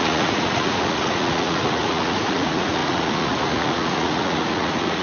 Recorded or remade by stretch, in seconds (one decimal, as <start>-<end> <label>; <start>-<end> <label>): 0.0-5.0 remade